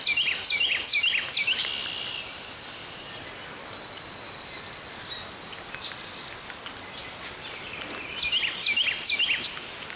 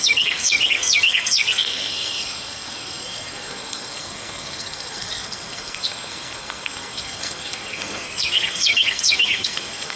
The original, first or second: first